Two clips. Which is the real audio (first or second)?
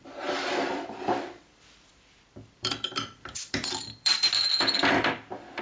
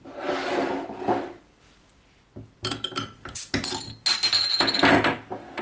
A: second